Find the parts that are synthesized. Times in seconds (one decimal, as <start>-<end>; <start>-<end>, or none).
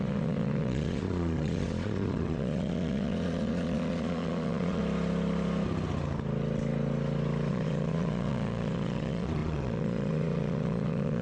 0.0-4.8; 7.5-11.2